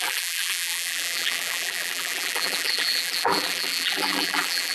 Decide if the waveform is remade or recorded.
remade